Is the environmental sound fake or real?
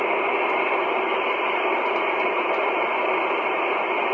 real